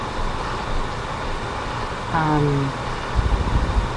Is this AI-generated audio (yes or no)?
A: no